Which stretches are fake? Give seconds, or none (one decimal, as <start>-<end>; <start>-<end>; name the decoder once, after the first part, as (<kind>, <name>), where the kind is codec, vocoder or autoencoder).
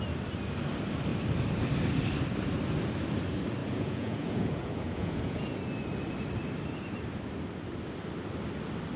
3.6-5.6 (vocoder, Vocos)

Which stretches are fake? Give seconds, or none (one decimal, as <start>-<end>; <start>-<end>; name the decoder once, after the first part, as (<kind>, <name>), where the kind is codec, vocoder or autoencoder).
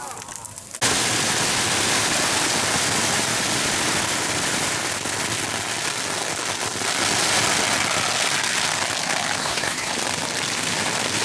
9.4-9.9 (codec, SNAC)